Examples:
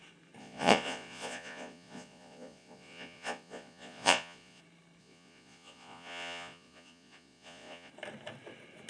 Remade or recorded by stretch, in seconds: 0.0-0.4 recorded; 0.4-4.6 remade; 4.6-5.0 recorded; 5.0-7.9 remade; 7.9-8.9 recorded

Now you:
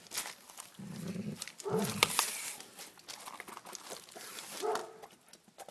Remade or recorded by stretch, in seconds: 0.0-5.7 recorded

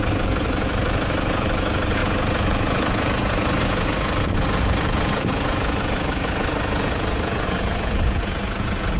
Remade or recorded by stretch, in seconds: 0.0-9.0 remade